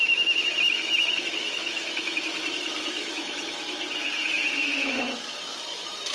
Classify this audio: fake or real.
fake